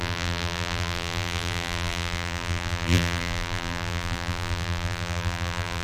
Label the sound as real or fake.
fake